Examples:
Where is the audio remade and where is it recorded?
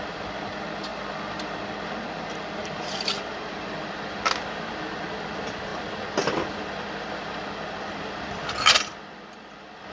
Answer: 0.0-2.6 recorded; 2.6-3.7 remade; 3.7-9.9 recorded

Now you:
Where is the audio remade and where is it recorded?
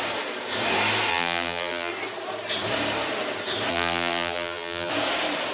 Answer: 0.0-1.1 recorded; 1.1-1.9 remade; 1.9-3.7 recorded; 3.7-4.9 remade; 4.9-5.5 recorded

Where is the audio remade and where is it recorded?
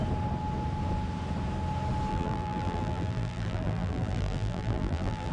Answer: 0.0-2.1 recorded; 2.1-5.3 remade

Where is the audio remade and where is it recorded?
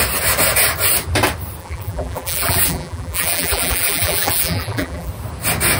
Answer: 0.0-1.6 recorded; 1.6-5.1 remade; 5.1-5.8 recorded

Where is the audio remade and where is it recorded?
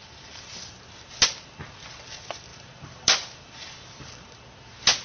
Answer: 0.0-1.1 remade; 1.1-2.5 recorded; 2.5-4.1 remade; 4.1-5.0 recorded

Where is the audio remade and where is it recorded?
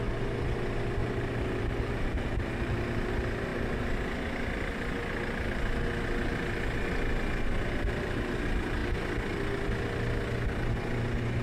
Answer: 0.0-1.0 recorded; 1.0-3.1 remade; 3.1-11.4 recorded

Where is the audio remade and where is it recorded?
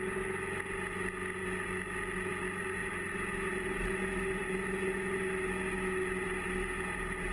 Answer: 0.0-2.8 recorded; 2.8-4.4 remade; 4.4-7.3 recorded